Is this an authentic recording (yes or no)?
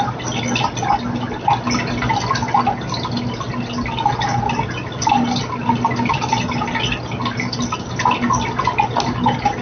yes